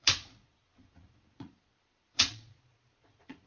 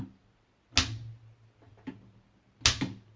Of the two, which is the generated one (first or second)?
first